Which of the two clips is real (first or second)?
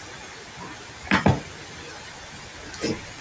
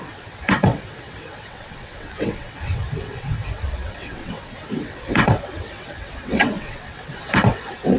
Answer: first